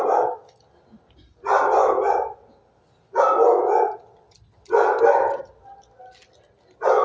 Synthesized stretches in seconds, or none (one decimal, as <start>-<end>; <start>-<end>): none